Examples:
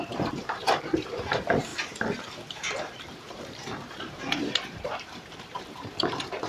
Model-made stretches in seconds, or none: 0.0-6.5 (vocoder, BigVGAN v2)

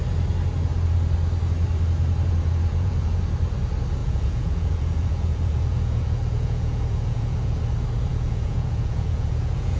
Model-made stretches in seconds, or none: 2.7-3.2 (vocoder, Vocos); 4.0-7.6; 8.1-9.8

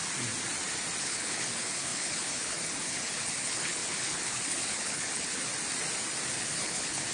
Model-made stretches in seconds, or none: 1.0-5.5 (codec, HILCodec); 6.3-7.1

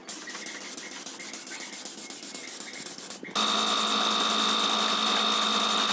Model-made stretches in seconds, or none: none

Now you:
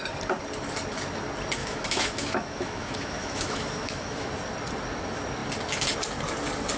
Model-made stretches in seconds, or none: 1.6-4.3 (autoencoder, DAC-VAE)

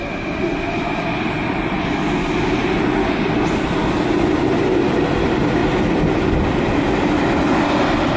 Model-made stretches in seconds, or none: 5.6-6.4 (vocoder, BigVGAN v2)

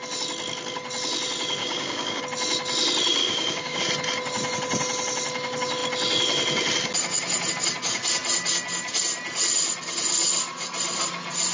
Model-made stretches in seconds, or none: 1.6-2.2 (codec, DAC); 3.2-3.8